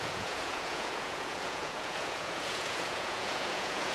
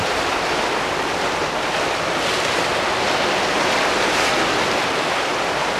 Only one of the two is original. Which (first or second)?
second